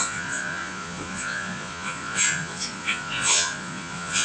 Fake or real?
fake